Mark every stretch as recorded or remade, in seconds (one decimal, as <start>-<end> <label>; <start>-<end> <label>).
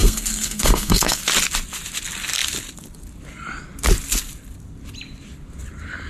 0.0-1.2 remade; 1.2-6.1 recorded